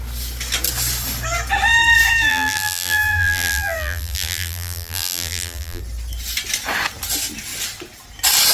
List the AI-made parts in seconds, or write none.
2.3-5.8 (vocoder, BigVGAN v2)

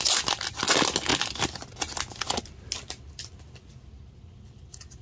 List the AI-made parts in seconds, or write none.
none

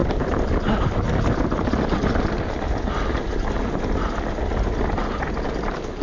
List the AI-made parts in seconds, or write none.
0.0-1.0 (vocoder, BigVGAN v2)

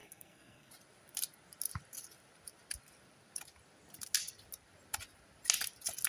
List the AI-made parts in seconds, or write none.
0.0-0.7 (codec, SNAC)

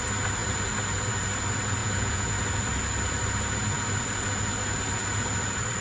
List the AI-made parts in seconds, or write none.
1.8-2.3 (vocoder, Vocos)

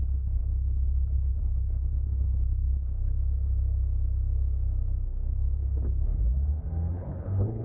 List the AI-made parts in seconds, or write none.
0.0-3.0 (codec, HILCodec); 6.9-7.6